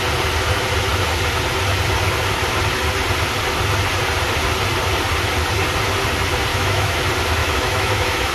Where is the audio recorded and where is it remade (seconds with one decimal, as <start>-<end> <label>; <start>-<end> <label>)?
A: 0.0-6.5 recorded; 6.5-7.0 remade; 7.0-7.4 recorded; 7.4-8.3 remade